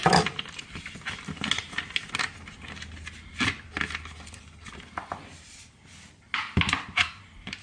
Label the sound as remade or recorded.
recorded